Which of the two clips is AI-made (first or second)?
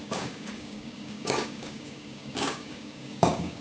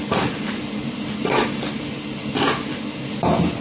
first